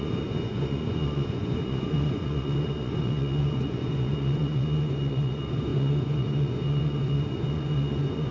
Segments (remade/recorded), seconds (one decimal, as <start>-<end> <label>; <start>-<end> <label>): 0.0-8.3 remade